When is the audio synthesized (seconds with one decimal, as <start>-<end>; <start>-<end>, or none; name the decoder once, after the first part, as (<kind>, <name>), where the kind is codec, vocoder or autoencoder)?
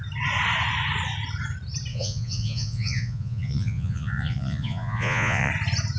1.9-5.5 (vocoder, Vocos)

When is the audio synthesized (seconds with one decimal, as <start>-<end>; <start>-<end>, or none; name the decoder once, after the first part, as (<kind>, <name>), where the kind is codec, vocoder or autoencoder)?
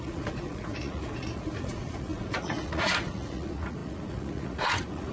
0.0-5.1 (vocoder, Vocos)